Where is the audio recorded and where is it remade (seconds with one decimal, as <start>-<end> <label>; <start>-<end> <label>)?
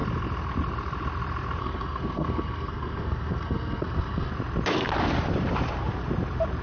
0.0-1.6 recorded; 1.6-4.3 remade; 4.3-6.6 recorded